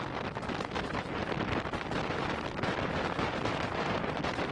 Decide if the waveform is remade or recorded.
remade